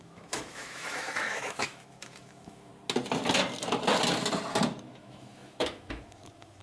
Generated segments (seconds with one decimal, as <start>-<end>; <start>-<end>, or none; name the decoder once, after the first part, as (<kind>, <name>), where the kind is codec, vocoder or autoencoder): 0.0-2.7 (autoencoder, DAC-VAE); 4.8-6.6